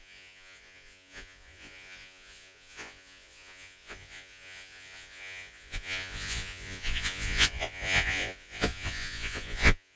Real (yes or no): no